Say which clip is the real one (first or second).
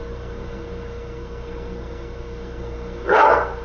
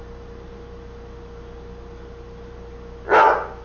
second